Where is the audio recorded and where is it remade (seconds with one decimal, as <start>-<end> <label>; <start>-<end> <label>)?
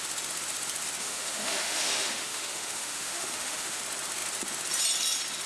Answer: 0.0-1.0 recorded; 1.0-3.8 remade; 3.8-5.5 recorded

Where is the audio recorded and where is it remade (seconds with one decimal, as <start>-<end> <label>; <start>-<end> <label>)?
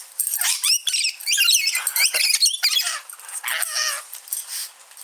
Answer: 0.0-5.0 recorded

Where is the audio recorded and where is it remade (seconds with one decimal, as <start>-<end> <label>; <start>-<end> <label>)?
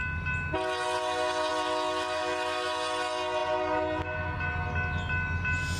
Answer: 0.0-5.8 recorded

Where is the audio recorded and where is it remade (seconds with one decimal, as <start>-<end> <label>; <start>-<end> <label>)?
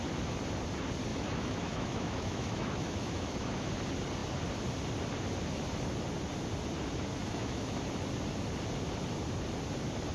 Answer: 0.0-1.1 recorded; 1.1-3.7 remade; 3.7-7.2 recorded; 7.2-7.8 remade; 7.8-10.1 recorded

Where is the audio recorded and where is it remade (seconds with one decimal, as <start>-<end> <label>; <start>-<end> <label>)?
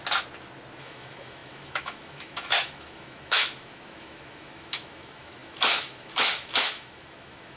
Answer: 0.0-0.8 recorded; 0.8-7.6 remade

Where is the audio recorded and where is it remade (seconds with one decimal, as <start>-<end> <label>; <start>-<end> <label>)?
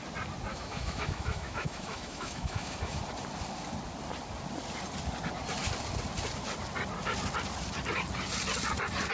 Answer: 0.0-0.5 recorded; 0.5-3.0 remade; 3.0-9.1 recorded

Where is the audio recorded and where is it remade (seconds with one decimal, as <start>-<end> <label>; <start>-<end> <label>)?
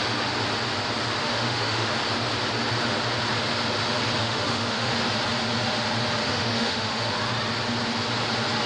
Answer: 0.0-1.2 recorded; 1.2-1.9 remade; 1.9-4.2 recorded; 4.2-4.9 remade; 4.9-6.2 recorded; 6.2-7.1 remade; 7.1-8.7 recorded